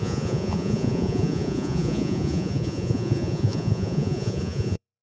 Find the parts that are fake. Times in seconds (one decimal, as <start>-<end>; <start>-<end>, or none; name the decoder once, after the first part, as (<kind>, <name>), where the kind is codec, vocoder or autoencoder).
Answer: 0.0-5.0 (vocoder, Vocos)